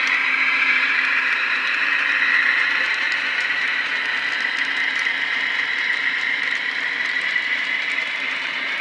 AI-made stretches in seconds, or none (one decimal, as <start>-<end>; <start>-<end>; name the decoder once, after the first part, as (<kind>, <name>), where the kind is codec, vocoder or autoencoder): 0.0-3.9 (vocoder, BigVGAN v2); 4.6-8.8